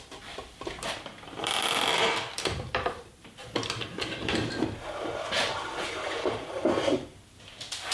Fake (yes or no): yes